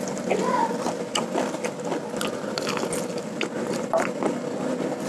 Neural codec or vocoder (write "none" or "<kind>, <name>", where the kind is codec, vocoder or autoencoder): none